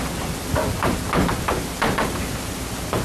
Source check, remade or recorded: recorded